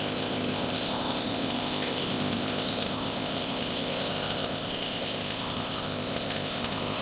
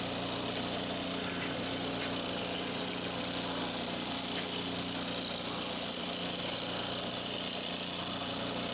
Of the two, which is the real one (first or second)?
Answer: second